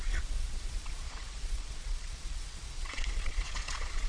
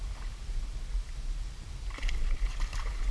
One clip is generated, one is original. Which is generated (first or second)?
first